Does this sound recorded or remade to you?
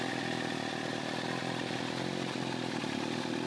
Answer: recorded